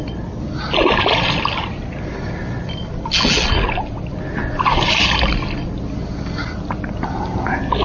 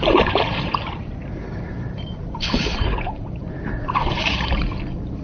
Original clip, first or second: first